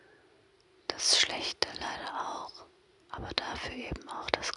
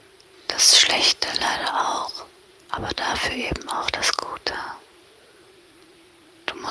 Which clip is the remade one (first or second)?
second